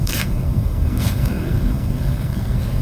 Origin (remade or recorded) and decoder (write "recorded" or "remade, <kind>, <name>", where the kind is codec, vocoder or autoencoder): remade, codec, SNAC